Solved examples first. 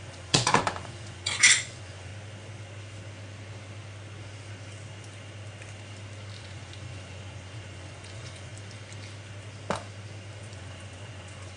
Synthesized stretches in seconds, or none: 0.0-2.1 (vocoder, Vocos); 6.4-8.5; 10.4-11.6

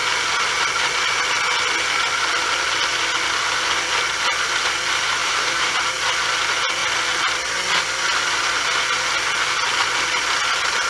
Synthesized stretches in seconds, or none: 5.2-6.1 (vocoder, BigVGAN v2)

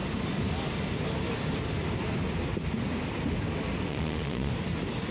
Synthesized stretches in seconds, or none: 3.9-4.5 (vocoder, Vocos)

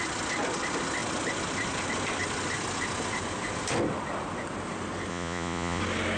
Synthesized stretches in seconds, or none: 5.1-5.8 (vocoder, Vocos)

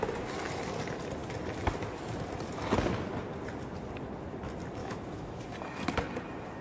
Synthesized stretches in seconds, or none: 4.8-5.4 (autoencoder, DAC-VAE)

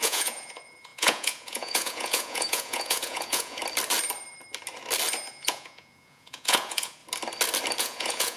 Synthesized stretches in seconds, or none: 0.0-3.6 (vocoder, Vocos); 5.3-7.0; 7.8-8.4